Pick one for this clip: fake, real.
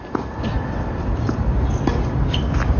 fake